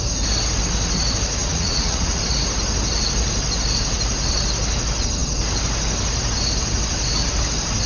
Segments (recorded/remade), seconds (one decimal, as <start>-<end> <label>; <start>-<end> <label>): 0.0-1.4 recorded; 1.4-2.2 remade; 2.2-7.9 recorded